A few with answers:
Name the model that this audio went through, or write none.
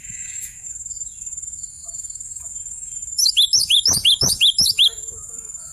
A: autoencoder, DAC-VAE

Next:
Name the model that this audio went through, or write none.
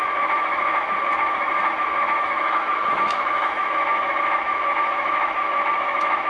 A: autoencoder, DAC-VAE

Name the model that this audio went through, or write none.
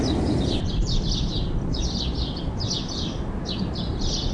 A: none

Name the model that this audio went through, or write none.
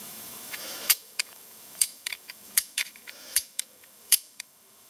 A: autoencoder, DAC-VAE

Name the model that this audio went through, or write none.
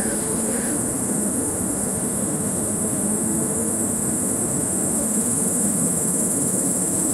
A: autoencoder, DAC-VAE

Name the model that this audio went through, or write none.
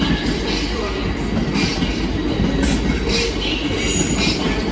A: none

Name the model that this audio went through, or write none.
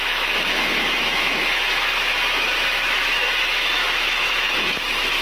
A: autoencoder, DAC-VAE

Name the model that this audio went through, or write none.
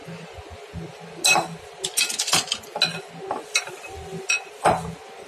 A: none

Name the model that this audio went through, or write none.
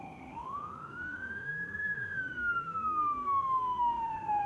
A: autoencoder, DAC-VAE